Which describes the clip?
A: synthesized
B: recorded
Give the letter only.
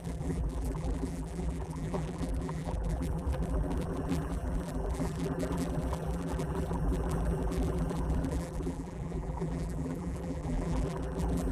A